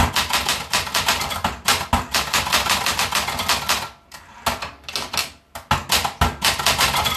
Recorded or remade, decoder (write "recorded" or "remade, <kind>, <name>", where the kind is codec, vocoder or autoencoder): recorded